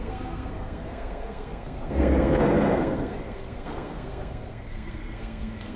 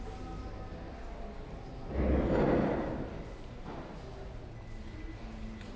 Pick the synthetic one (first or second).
first